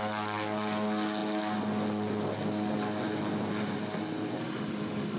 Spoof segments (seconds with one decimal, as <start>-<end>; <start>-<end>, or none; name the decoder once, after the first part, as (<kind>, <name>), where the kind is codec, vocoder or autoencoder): 4.4-5.2 (autoencoder, DAC-VAE)

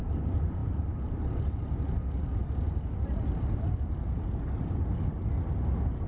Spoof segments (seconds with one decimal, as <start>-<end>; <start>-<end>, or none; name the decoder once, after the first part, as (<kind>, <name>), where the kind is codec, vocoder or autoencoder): none

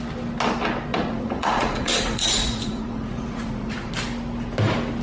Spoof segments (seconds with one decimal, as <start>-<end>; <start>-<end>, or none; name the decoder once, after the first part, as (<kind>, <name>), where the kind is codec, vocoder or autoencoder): 0.9-3.9 (vocoder, Vocos)